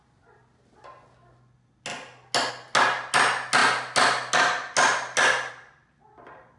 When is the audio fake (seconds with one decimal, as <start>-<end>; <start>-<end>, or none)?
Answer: none